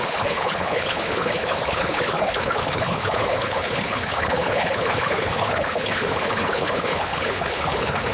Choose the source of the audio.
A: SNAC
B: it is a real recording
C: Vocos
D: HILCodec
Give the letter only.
D